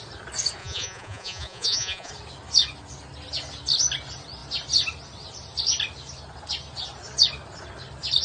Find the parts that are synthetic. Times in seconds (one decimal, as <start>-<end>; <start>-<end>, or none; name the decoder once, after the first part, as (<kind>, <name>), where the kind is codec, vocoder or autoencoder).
0.6-2.1 (vocoder, Vocos)